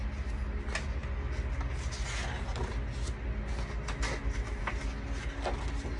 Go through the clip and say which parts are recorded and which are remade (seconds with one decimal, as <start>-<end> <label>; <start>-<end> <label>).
0.0-6.0 recorded